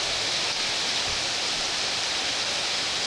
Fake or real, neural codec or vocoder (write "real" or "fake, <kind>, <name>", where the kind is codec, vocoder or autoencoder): real